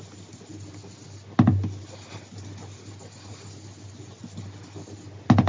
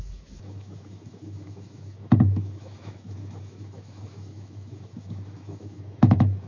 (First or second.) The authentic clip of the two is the first